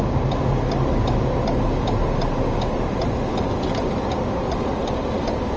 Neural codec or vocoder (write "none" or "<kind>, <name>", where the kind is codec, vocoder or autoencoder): none